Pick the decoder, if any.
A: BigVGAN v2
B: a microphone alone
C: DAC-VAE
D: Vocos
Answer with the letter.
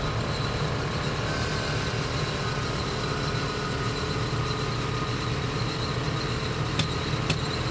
B